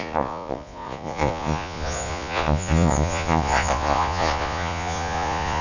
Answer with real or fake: fake